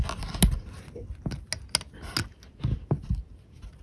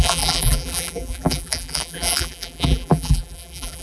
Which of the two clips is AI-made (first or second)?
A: second